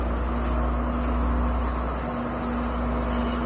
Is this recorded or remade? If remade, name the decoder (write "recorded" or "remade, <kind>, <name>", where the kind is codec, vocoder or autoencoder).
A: recorded